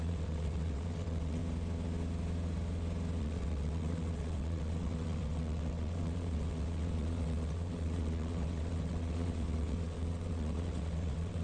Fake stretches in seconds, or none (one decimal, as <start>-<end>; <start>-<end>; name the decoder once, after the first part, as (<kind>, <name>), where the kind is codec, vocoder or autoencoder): 0.0-1.4 (vocoder, WaveNeXt); 3.2-11.4